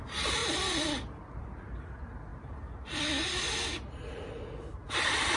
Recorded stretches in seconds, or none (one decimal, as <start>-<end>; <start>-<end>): 0.0-5.4